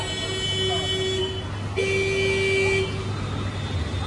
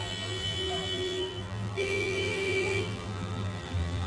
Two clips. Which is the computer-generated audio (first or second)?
second